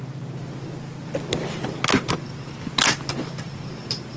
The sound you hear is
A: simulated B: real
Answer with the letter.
B